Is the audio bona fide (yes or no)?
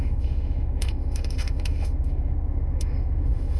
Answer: no